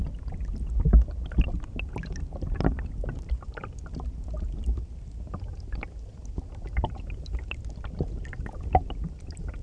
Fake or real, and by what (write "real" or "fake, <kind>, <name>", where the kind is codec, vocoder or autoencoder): real